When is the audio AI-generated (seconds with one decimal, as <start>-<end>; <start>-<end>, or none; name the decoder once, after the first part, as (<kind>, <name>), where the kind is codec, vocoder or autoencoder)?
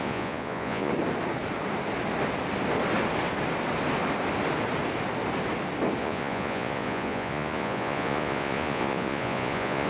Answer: 0.0-0.9 (vocoder, Vocos); 6.0-9.9